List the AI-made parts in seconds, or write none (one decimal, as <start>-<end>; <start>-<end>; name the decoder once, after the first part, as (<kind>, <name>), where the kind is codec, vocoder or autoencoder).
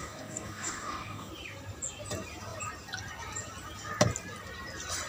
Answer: 0.0-1.3 (codec, DAC)